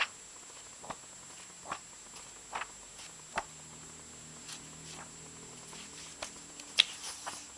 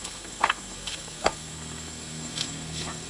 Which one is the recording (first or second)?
first